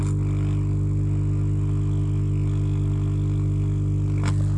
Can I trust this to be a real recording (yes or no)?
yes